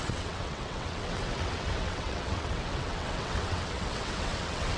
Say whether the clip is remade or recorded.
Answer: remade